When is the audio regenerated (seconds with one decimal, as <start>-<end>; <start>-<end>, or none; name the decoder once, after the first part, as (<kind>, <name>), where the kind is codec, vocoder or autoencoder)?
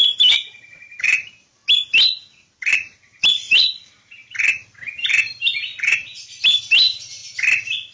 0.0-1.6 (vocoder, BigVGAN v2); 2.7-4.2; 4.9-7.2